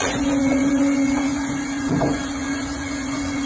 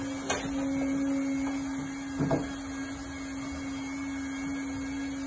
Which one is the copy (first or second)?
first